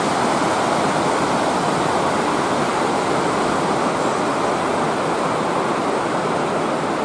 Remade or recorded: recorded